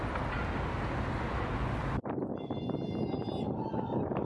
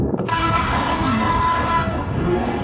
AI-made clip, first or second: second